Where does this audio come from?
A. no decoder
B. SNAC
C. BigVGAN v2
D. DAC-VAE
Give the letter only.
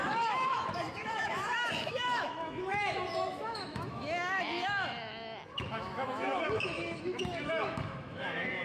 D